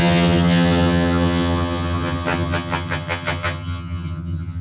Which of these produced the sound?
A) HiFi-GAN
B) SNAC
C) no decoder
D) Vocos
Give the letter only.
A